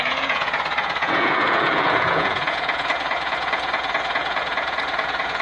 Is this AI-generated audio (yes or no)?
yes